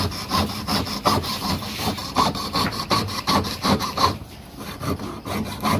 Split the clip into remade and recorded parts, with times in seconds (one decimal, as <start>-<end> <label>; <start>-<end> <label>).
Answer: 0.0-2.0 recorded; 2.0-5.8 remade